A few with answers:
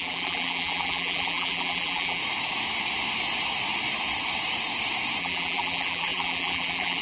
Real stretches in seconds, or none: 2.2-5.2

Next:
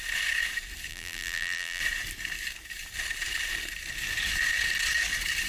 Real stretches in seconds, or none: 0.0-0.9; 1.8-5.5

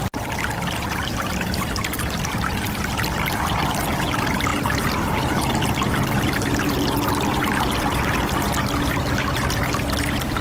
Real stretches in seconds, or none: 0.0-10.4

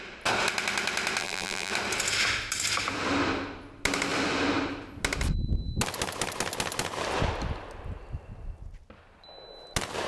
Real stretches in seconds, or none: 0.0-1.2; 1.7-10.1

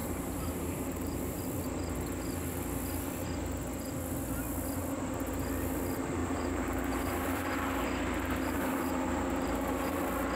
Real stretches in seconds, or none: 1.4-6.2; 9.9-10.4